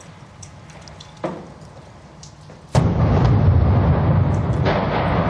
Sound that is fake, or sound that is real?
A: real